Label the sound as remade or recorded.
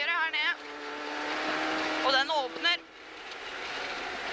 recorded